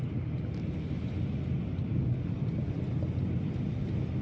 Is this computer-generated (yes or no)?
no